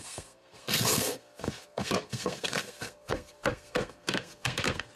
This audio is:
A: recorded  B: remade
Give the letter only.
B